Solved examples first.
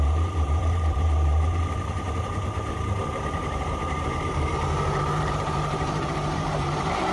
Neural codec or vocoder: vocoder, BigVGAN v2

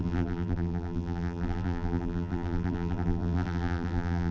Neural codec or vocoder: vocoder, BigVGAN v2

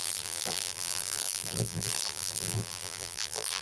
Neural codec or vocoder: vocoder, BigVGAN v2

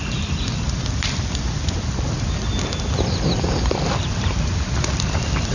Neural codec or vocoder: vocoder, BigVGAN v2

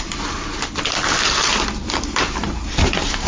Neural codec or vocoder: vocoder, BigVGAN v2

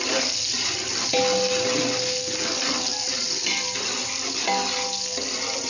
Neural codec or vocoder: none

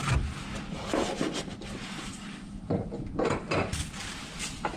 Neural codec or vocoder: none